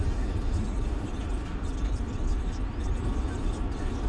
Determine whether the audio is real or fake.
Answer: fake